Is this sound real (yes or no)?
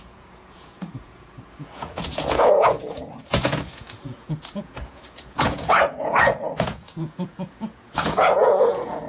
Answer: no